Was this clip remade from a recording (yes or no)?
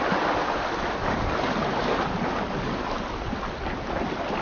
no